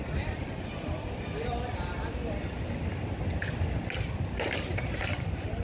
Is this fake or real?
real